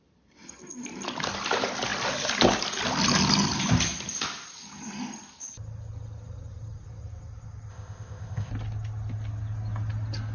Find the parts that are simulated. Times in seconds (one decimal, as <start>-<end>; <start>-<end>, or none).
7.7-8.5